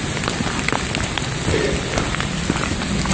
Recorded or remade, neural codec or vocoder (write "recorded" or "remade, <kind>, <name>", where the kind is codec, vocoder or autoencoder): recorded